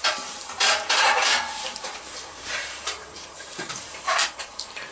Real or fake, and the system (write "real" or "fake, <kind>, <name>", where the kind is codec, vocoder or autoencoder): fake, vocoder, BigVGAN v2